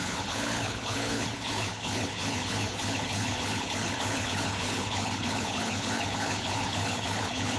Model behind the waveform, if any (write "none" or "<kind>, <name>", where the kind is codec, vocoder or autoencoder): codec, HILCodec